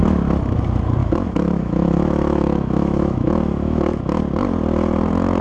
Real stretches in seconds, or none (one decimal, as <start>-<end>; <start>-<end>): 0.0-1.0; 4.2-5.4